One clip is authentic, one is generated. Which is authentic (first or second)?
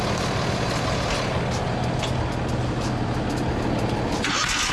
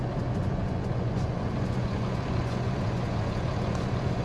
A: first